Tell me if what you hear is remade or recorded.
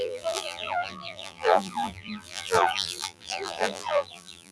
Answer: remade